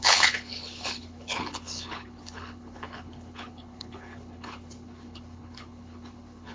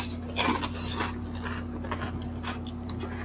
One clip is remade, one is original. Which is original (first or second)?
second